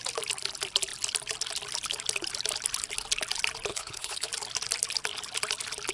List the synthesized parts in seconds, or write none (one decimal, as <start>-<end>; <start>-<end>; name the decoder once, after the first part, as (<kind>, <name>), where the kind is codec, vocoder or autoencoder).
3.7-4.3 (codec, HILCodec)